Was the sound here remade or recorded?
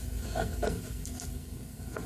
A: remade